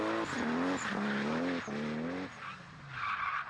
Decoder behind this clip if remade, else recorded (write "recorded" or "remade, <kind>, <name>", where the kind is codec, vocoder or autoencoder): recorded